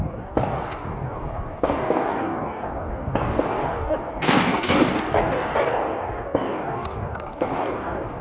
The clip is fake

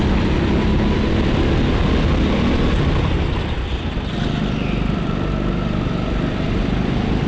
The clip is real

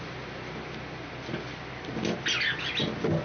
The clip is real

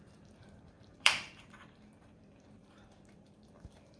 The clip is fake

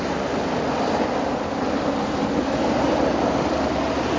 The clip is real